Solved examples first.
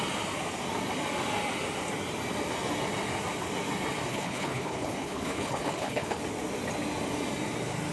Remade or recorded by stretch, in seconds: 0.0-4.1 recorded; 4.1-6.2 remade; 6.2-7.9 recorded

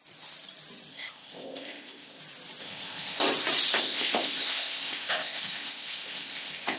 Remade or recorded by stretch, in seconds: 0.0-0.9 recorded; 0.9-2.2 remade; 2.2-2.6 recorded; 2.6-3.2 remade; 3.2-3.7 recorded; 3.7-6.8 remade

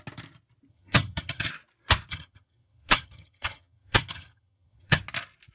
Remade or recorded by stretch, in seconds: 0.0-0.7 recorded; 0.7-1.5 remade; 1.5-2.1 recorded; 2.1-5.0 remade; 5.0-5.5 recorded

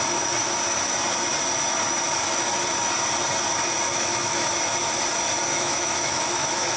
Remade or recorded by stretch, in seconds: 0.0-3.9 recorded; 3.9-4.5 remade; 4.5-5.5 recorded; 5.5-6.8 remade

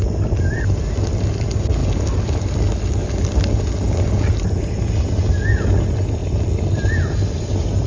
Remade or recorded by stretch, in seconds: 0.0-7.9 recorded

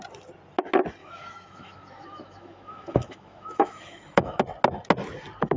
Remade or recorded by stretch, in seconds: 0.0-1.0 recorded; 1.0-4.4 remade; 4.4-5.6 recorded

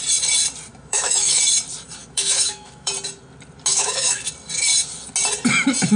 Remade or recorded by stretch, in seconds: 0.0-0.7 recorded; 0.7-1.4 remade; 1.4-2.0 recorded; 2.0-2.9 remade; 2.9-3.7 recorded; 3.7-4.3 remade; 4.3-6.0 recorded